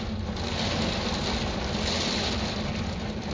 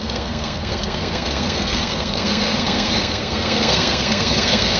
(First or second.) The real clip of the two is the first